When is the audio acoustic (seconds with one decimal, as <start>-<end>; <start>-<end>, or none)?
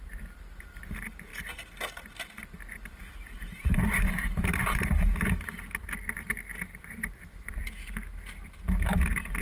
0.0-3.7; 5.1-6.7; 7.5-9.4